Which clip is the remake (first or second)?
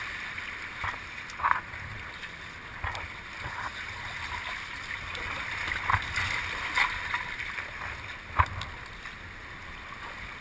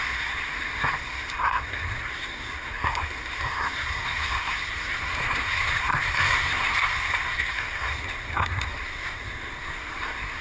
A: second